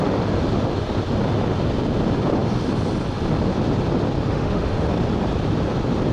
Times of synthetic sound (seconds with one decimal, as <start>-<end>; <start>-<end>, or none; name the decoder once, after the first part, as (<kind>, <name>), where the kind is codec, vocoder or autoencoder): 4.3-4.9 (autoencoder, DAC-VAE)